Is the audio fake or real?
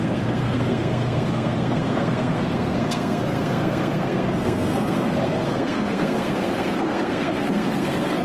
fake